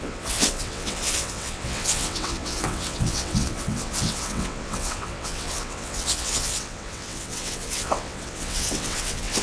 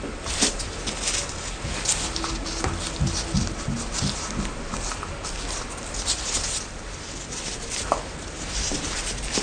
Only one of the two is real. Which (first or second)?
second